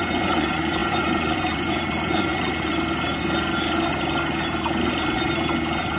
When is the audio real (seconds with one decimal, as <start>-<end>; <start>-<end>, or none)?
2.7-6.0